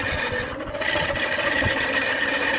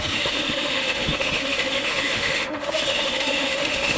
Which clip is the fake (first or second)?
second